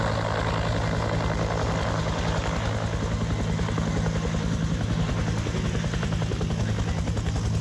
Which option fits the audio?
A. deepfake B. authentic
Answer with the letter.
B